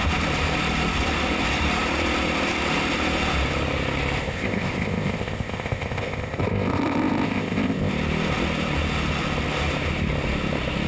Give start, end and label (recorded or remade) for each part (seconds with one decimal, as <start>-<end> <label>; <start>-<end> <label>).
0.0-4.2 recorded; 4.2-7.9 remade; 7.9-10.9 recorded